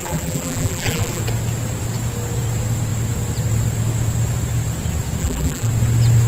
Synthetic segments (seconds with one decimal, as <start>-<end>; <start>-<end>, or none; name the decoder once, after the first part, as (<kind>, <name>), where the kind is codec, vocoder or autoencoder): 0.0-1.2 (vocoder, BigVGAN v2); 5.2-5.7